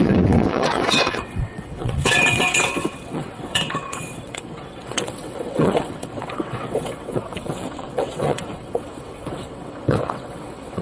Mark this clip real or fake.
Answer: fake